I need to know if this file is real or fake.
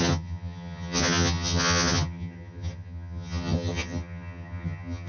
fake